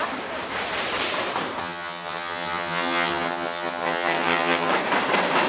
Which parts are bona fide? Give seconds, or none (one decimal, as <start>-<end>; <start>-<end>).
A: 0.0-1.6; 4.7-5.5